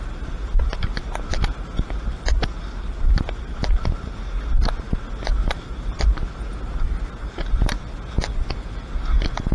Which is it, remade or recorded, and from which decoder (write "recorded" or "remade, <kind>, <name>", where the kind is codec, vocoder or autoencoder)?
recorded